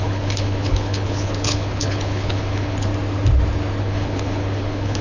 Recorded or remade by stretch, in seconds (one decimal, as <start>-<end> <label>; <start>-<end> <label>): 0.0-2.9 remade; 2.9-3.8 recorded; 3.8-5.0 remade